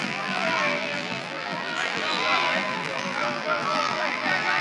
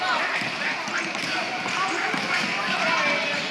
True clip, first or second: second